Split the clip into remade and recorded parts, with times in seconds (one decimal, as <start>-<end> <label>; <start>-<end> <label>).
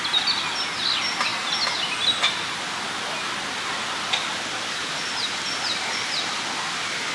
0.0-7.1 recorded